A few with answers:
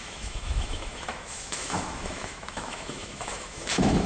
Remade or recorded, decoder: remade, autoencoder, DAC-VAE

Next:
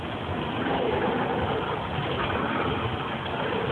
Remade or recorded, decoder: recorded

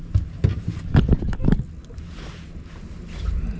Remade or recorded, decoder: recorded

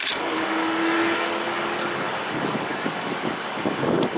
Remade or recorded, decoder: remade, codec, DAC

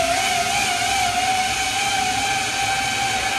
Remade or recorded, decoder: recorded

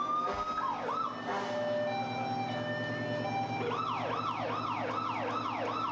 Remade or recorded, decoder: recorded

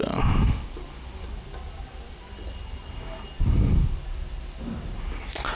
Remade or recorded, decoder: recorded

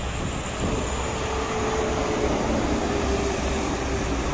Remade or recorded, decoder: recorded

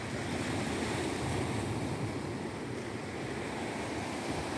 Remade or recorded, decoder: recorded